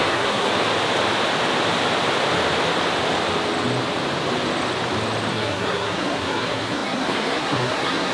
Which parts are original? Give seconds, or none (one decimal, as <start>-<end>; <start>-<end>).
0.5-5.3